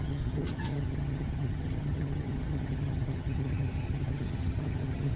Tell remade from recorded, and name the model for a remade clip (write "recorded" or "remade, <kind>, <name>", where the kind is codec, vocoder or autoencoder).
remade, vocoder, HiFi-GAN